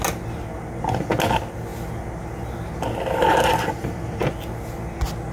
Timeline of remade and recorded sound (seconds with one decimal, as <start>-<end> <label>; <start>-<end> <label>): 0.0-5.3 recorded